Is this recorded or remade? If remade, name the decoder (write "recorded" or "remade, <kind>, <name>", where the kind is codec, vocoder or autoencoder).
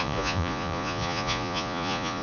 remade, vocoder, Vocos